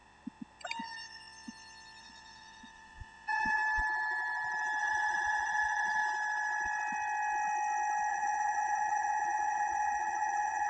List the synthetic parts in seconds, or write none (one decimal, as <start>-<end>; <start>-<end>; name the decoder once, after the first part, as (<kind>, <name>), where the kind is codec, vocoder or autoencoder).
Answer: 2.0-3.6 (vocoder, Vocos); 4.8-6.0; 8.1-10.7